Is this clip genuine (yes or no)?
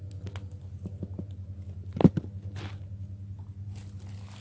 yes